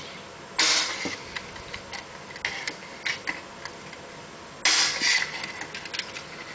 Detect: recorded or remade recorded